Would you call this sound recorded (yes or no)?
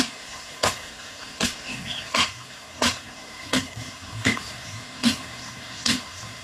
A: no